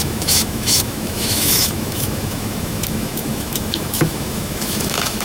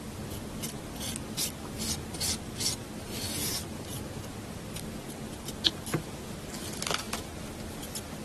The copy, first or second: first